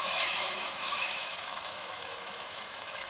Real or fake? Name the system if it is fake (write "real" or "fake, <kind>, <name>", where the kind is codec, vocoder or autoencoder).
fake, autoencoder, DAC-VAE